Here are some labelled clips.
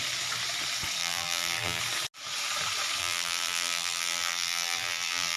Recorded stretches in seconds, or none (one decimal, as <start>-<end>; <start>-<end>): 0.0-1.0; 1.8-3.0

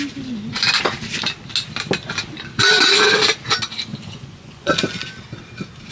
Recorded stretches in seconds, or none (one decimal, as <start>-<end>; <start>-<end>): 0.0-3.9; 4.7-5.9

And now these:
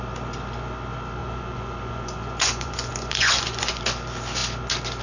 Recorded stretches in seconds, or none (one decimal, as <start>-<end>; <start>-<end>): 0.0-1.2; 3.8-5.0